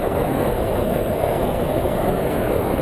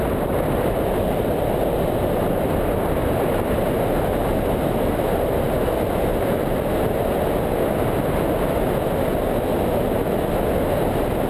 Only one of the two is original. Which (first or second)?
second